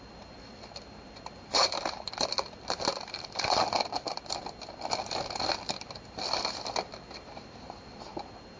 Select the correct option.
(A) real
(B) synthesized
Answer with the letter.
A